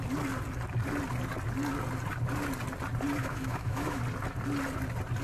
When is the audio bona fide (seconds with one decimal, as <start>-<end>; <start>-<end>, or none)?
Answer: 0.0-3.2; 4.0-5.2